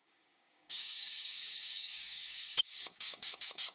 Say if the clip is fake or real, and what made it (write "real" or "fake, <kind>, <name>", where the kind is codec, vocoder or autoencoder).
fake, codec, DAC